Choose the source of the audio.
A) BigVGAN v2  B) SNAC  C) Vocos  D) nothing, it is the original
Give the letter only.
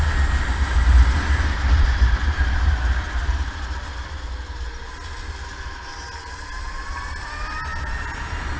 D